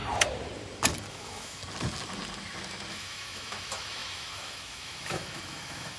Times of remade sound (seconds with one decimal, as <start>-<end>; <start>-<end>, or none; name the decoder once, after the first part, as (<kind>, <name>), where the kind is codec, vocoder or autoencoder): 1.1-1.6 (autoencoder, DAC-VAE); 2.9-6.0